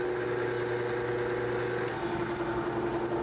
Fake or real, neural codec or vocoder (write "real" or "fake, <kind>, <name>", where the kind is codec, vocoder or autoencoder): real